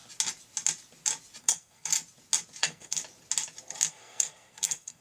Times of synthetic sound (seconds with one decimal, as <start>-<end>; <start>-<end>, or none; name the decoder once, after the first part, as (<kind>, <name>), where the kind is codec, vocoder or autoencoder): 1.4-1.9 (codec, SNAC); 2.6-3.0; 3.9-5.0